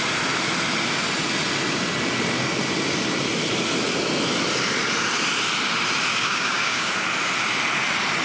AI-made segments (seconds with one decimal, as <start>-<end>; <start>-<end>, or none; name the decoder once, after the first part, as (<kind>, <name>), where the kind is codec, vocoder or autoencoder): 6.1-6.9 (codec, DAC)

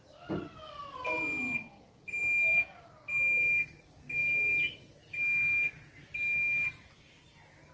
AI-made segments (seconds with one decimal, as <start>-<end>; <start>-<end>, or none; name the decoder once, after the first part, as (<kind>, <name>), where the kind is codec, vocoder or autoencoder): none

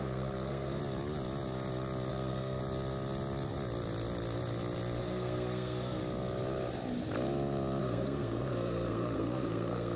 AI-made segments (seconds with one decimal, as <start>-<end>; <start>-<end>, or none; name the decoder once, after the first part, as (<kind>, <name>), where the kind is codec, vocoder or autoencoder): 0.0-0.8 (codec, SNAC); 2.1-2.6; 5.0-6.0; 7.8-10.0

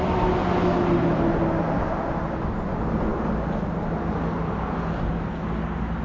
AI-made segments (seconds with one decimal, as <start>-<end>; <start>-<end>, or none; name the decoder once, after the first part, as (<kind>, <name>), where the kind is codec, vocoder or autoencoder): none

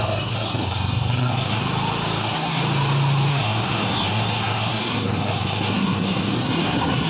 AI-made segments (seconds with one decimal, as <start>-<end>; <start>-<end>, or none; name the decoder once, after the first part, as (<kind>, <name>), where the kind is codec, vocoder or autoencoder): 0.0-1.6 (codec, SNAC); 2.2-2.6; 3.3-7.1

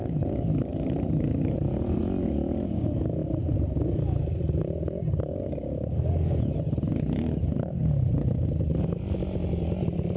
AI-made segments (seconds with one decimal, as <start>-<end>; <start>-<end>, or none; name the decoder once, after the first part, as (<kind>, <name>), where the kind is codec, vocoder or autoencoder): 0.7-2.0 (vocoder, BigVGAN v2)

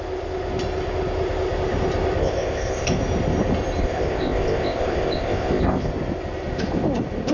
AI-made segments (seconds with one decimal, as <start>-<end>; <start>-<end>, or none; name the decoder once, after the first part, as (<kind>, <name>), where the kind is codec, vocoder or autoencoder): 2.2-3.0 (codec, ZipCodec); 3.8-5.9

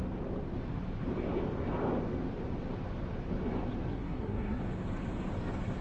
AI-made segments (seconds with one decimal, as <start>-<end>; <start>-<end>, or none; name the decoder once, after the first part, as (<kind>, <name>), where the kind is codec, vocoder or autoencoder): 3.9-4.6 (codec, SNAC)